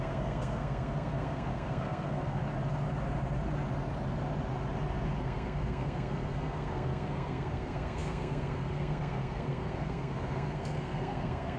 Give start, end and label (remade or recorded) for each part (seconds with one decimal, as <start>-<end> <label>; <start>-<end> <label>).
0.0-2.4 remade; 2.4-5.2 recorded; 5.2-11.6 remade